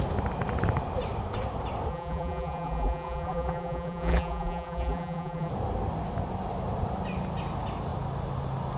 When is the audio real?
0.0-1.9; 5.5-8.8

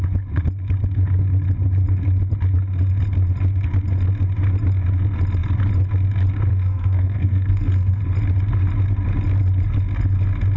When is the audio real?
0.0-6.5; 8.0-10.6